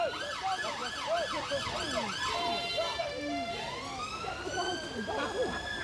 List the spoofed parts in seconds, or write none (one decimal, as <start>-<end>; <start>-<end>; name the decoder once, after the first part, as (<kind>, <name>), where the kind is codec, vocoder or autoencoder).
none